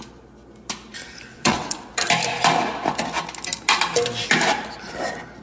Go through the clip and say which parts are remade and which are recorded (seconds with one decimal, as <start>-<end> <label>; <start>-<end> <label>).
0.0-1.3 recorded; 1.3-1.9 remade; 1.9-5.4 recorded